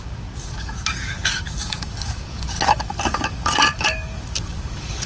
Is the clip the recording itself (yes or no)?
no